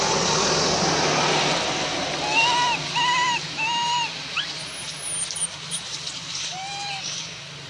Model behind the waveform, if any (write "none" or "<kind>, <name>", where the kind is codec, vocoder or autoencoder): none